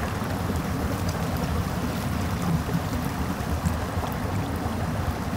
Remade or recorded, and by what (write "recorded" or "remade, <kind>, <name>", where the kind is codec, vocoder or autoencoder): recorded